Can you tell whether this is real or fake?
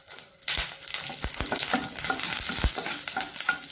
real